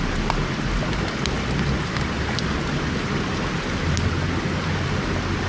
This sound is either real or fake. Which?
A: real